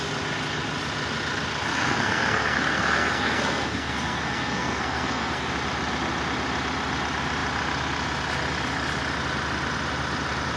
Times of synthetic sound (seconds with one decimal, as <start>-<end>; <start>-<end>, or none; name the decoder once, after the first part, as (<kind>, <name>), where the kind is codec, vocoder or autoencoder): 1.7-5.5 (codec, SNAC)